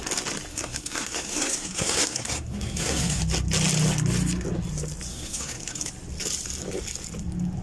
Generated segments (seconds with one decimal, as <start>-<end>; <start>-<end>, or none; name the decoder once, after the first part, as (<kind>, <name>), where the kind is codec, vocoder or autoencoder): 0.5-3.2 (codec, SNAC); 5.1-5.9